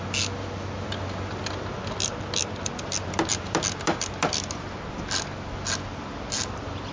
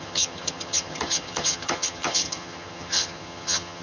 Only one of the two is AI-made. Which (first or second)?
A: second